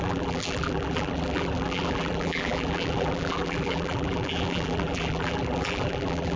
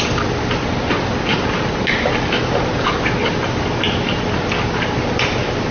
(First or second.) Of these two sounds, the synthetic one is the first